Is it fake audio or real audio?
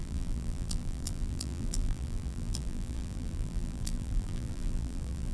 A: fake